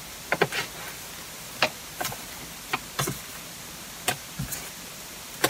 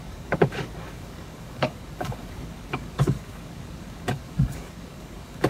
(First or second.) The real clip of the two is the first